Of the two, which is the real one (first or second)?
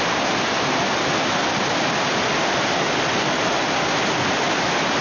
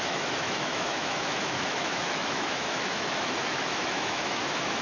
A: first